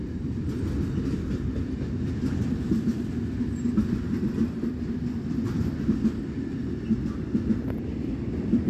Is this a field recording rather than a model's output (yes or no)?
yes